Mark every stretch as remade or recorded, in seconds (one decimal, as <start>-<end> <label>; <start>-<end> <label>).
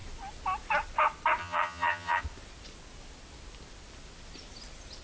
0.0-1.4 recorded; 1.4-2.2 remade; 2.2-5.0 recorded